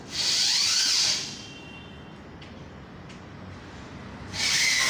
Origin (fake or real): real